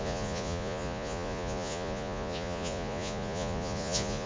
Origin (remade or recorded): remade